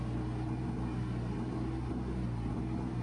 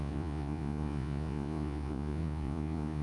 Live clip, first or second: first